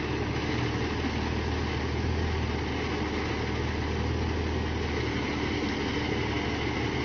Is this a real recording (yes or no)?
yes